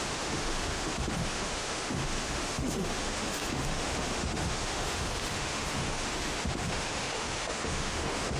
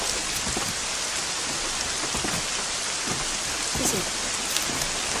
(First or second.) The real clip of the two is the second